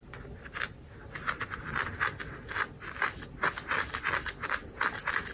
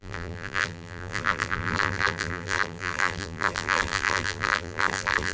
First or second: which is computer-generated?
second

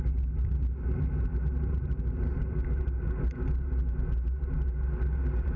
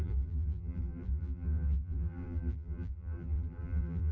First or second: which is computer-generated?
second